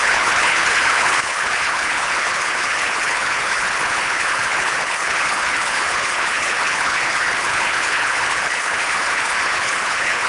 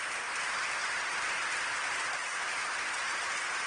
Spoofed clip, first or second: first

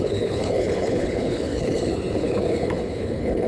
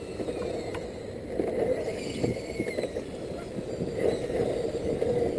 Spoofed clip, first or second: first